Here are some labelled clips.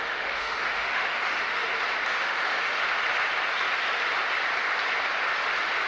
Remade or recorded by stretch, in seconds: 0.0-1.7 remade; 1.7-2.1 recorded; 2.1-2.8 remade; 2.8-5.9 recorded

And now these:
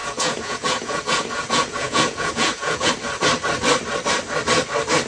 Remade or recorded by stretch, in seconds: 0.0-2.9 remade; 2.9-5.1 recorded